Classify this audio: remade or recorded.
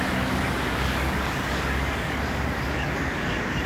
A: remade